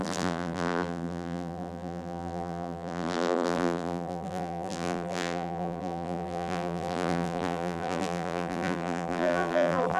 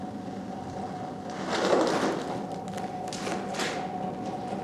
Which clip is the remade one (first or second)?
first